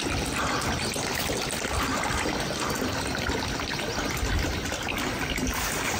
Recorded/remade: recorded